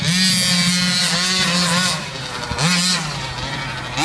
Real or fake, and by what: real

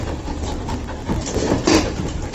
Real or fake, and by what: real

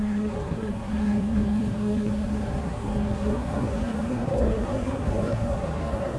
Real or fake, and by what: fake, codec, SNAC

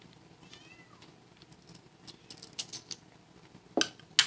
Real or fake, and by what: real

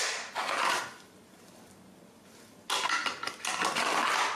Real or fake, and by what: real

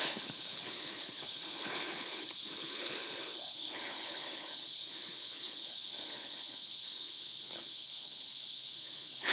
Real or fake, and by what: fake, codec, HILCodec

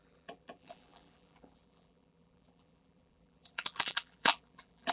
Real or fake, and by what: fake, vocoder, BigVGAN v2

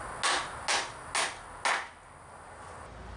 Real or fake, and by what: real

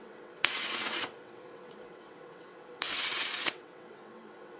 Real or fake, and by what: fake, vocoder, WaveNeXt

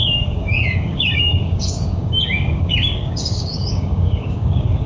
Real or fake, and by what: fake, codec, DAC